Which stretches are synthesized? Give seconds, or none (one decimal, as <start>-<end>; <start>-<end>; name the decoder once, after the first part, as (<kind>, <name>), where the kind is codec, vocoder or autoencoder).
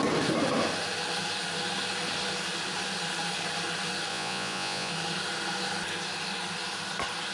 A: 4.1-4.9 (vocoder, Vocos)